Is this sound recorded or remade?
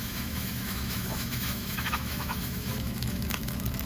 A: remade